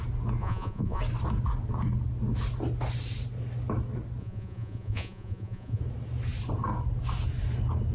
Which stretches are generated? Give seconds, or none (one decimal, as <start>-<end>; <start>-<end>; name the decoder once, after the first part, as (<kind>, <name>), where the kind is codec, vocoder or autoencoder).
0.4-1.0 (vocoder, Vocos); 4.2-5.8